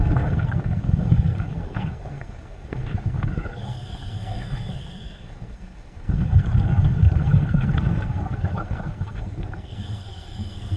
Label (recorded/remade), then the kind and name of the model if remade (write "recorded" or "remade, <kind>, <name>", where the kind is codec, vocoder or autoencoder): remade, codec, SNAC